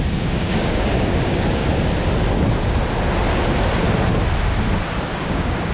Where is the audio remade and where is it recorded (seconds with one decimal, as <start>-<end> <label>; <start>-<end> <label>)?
0.0-1.6 remade; 1.6-5.0 recorded; 5.0-5.7 remade